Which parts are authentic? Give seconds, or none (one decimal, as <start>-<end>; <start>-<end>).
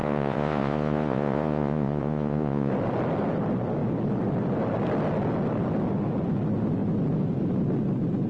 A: 2.7-8.3